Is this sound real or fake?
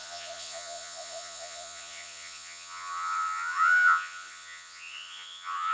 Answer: fake